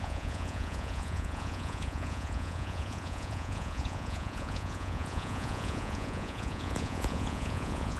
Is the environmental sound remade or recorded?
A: remade